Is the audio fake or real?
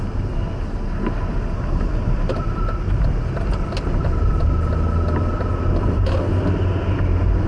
real